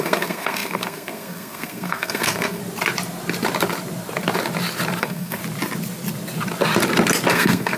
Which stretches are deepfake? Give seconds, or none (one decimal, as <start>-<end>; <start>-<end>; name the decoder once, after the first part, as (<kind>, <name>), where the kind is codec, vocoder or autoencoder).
0.0-2.6 (codec, SNAC); 5.0-5.4; 7.3-7.8